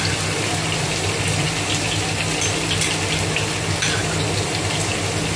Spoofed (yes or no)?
no